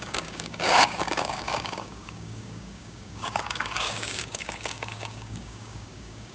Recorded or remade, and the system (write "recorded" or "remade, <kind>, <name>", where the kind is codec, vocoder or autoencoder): remade, codec, DAC